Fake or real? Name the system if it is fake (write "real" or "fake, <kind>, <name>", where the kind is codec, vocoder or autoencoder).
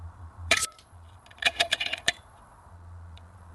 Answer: fake, vocoder, Vocos